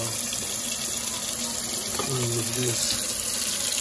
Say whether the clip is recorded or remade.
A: recorded